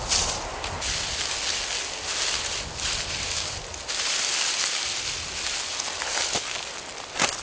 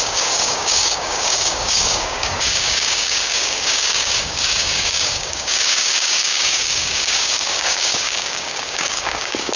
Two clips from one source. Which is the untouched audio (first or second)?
first